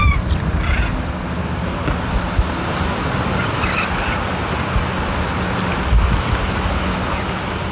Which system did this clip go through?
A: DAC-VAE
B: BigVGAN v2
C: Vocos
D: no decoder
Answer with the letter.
D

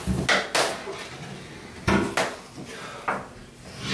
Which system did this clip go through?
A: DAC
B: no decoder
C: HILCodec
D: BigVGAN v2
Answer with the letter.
B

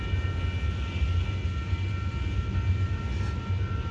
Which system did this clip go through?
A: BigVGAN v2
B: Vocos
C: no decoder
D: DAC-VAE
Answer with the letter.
C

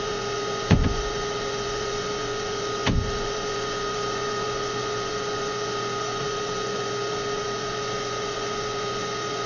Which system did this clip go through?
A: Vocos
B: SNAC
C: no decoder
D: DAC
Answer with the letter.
A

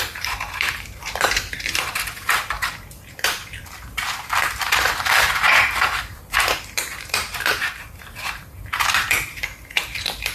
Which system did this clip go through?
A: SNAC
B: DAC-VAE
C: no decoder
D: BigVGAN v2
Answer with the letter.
D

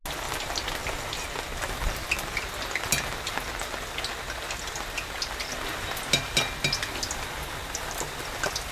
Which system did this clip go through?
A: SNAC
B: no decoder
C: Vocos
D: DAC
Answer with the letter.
B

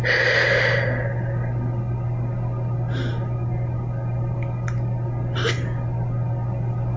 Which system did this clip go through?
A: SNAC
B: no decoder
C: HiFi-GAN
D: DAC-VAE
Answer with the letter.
B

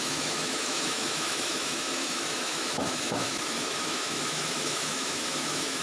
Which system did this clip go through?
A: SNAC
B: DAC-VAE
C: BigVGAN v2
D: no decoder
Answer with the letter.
B